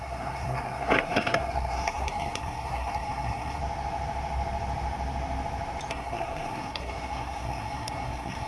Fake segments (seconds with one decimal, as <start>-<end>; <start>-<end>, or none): 0.0-3.6; 5.9-8.5